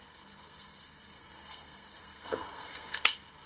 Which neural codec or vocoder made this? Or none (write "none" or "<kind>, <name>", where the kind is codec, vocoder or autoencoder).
codec, SNAC